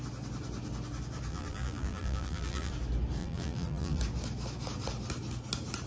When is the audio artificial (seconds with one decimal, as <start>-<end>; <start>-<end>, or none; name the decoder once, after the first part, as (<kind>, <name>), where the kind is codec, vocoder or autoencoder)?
1.3-2.7 (vocoder, BigVGAN v2); 3.2-4.0